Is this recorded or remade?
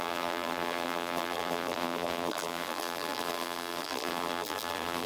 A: remade